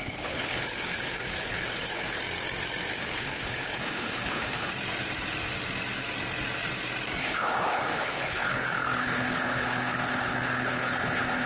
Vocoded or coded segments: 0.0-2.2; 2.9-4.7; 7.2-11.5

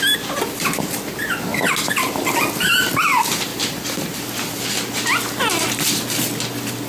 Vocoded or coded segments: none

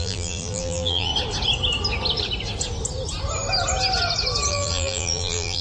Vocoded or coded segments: 0.0-1.1; 4.5-5.6